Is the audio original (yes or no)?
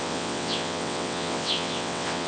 no